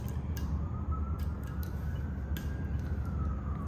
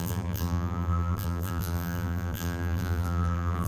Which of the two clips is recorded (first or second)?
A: first